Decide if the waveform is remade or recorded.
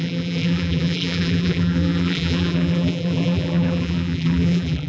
remade